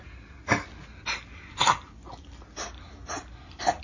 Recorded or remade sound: recorded